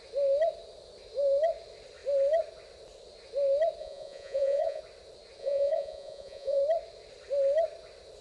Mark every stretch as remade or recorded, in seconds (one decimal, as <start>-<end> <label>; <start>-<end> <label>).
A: 0.0-3.8 recorded; 3.8-4.8 remade; 4.8-5.4 recorded; 5.4-6.6 remade; 6.6-8.2 recorded